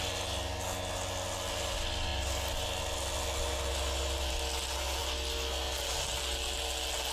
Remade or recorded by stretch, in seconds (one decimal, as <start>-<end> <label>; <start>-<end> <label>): 0.0-7.1 recorded